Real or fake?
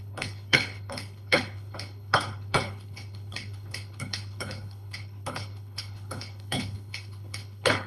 fake